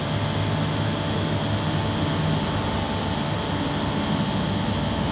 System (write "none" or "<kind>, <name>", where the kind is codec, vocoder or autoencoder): none